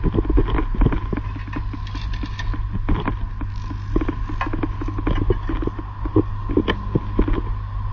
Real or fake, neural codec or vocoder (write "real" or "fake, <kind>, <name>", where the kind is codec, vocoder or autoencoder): real